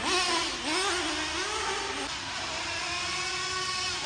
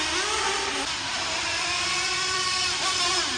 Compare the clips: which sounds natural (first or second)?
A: first